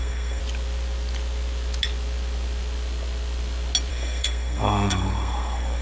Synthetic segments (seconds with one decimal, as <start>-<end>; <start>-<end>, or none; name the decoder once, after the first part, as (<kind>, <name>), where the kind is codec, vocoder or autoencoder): 0.0-0.4 (codec, SNAC); 3.9-5.8